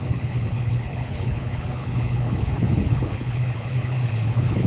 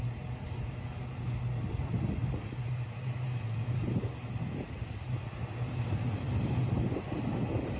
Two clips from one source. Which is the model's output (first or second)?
first